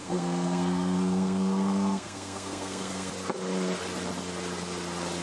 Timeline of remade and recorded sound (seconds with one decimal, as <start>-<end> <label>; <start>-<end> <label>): 0.0-3.1 remade; 3.1-5.2 recorded